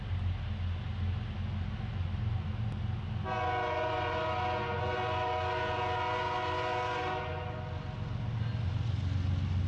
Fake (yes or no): no